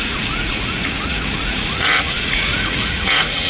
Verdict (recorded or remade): remade